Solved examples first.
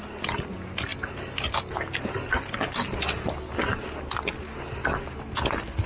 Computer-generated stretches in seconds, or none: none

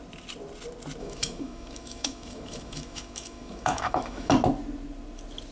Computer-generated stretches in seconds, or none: 1.0-4.3 (autoencoder, DAC-VAE)

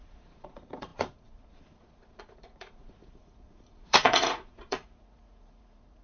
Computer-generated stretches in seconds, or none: 0.0-6.0 (vocoder, Vocos)

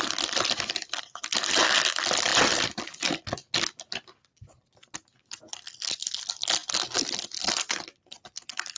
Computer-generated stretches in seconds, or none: none

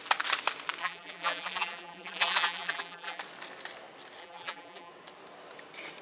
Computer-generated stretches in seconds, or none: 0.8-3.2 (vocoder, BigVGAN v2); 4.2-4.9